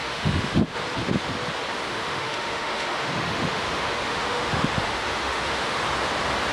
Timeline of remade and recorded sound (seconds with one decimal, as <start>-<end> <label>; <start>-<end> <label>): 0.0-0.8 remade; 0.8-1.9 recorded; 1.9-5.8 remade; 5.8-6.5 recorded